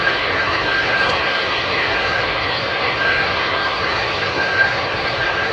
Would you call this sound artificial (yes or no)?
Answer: yes